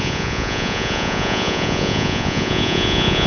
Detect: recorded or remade remade